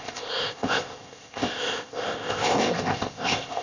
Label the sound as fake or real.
fake